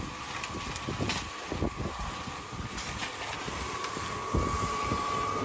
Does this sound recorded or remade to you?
recorded